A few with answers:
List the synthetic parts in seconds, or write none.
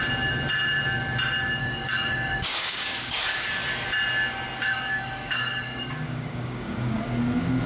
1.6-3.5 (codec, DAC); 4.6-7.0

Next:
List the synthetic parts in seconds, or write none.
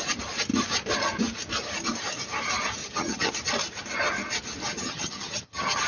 2.8-3.3 (vocoder, HiFi-GAN); 4.7-5.9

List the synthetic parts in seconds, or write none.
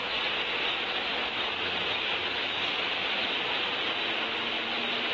none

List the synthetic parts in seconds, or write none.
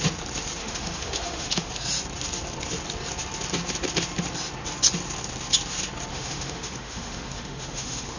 0.6-1.7 (autoencoder, DAC-VAE); 6.1-8.2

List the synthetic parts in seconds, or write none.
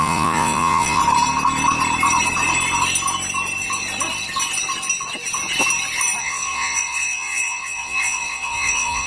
0.0-1.0 (vocoder, Vocos); 6.2-9.1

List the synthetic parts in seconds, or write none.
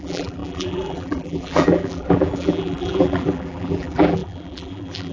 0.0-5.1 (vocoder, BigVGAN v2)